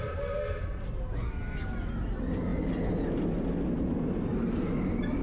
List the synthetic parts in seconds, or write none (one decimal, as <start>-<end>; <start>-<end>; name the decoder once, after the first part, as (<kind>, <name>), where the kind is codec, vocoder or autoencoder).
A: none

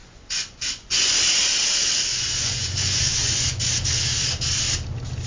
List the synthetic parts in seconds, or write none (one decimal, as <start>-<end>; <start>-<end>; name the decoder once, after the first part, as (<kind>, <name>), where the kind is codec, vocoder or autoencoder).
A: 0.0-1.1 (vocoder, Vocos); 2.1-3.6

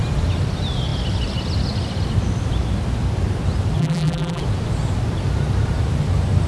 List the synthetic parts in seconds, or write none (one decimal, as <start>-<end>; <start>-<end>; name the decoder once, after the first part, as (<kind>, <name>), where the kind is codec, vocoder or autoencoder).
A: 3.8-4.4 (vocoder, BigVGAN v2)

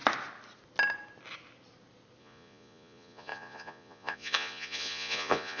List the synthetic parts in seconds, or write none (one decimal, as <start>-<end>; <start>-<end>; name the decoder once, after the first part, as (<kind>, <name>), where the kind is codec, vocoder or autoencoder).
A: 2.2-5.6 (vocoder, Vocos)